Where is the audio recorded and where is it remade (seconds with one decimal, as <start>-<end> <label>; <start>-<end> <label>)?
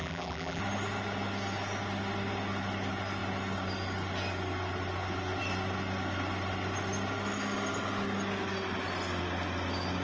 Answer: 0.0-0.6 remade; 0.6-10.0 recorded